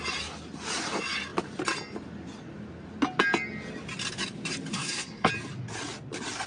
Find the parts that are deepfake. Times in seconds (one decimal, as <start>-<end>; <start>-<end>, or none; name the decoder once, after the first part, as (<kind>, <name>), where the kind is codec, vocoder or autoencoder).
4.7-5.3 (codec, SNAC)